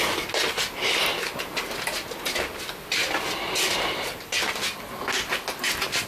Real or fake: real